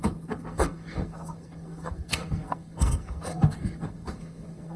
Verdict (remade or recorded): remade